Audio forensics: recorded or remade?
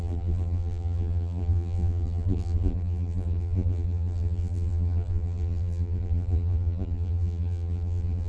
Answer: remade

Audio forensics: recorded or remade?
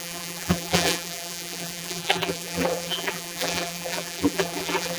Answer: remade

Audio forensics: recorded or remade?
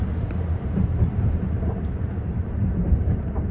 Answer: remade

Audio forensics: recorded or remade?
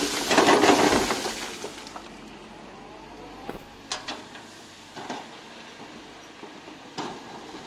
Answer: remade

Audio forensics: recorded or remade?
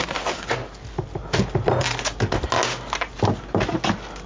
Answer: recorded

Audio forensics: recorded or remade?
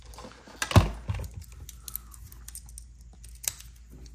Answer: recorded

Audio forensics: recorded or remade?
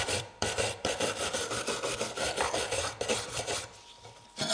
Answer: remade